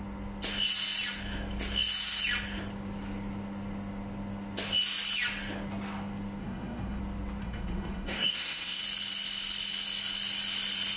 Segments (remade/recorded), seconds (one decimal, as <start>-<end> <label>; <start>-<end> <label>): 0.0-6.4 recorded; 6.4-7.0 remade; 7.0-7.4 recorded; 7.4-8.8 remade; 8.8-11.0 recorded